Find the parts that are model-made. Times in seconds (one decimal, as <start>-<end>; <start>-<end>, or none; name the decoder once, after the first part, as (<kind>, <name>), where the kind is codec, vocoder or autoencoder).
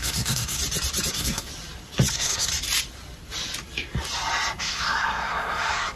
0.0-0.6 (codec, SNAC); 1.1-1.5; 2.1-2.5; 4.6-6.0